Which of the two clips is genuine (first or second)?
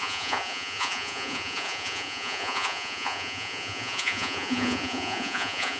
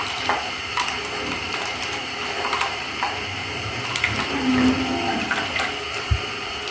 second